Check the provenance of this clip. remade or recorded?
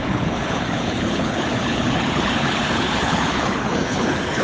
remade